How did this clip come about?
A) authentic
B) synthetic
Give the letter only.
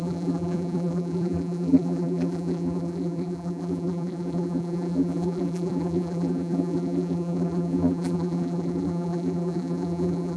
B